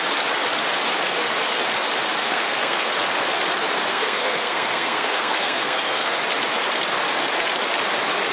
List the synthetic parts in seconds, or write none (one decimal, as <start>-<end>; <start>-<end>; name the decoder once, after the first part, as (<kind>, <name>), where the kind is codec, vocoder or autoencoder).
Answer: 2.2-2.9 (codec, SNAC); 3.9-6.2